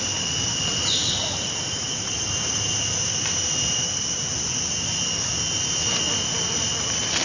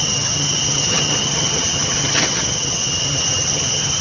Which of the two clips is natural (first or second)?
first